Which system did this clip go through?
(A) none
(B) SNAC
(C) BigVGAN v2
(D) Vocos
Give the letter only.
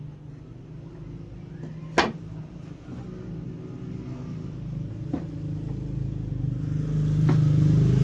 A